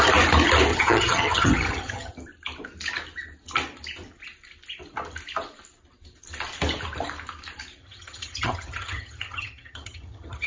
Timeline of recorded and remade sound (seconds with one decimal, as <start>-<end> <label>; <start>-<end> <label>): 0.0-0.7 recorded; 0.7-2.1 remade; 2.1-7.8 recorded; 7.8-10.5 remade